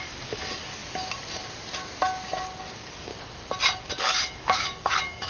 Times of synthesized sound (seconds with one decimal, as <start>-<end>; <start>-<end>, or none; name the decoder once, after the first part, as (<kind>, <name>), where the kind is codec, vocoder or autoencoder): 0.0-0.8 (codec, DAC); 2.6-3.1; 3.8-5.3

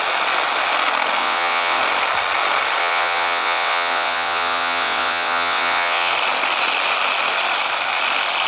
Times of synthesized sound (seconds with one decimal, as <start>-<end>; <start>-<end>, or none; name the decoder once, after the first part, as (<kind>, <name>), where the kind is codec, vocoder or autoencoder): 1.2-1.8 (vocoder, WaveNeXt); 2.8-6.1

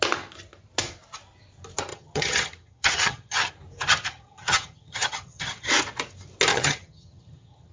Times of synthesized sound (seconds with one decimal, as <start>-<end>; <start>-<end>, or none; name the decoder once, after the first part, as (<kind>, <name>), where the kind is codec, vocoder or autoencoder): 1.9-3.5 (vocoder, HiFi-GAN); 4.1-5.7; 6.5-7.7

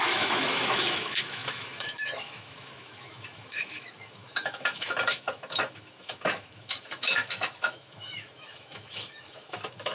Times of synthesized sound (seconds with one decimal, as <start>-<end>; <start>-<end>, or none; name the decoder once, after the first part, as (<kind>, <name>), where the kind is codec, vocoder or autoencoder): 0.0-9.9 (autoencoder, DAC-VAE)